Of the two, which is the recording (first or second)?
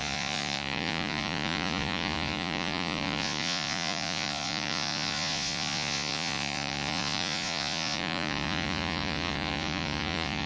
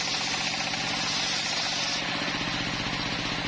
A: second